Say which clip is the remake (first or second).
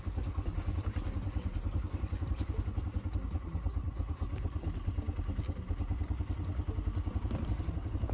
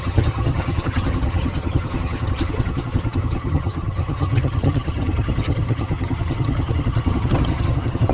second